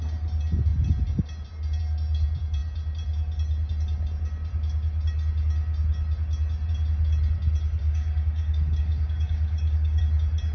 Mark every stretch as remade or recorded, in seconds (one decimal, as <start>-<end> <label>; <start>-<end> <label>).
0.0-7.8 recorded; 7.8-10.0 remade; 10.0-10.5 recorded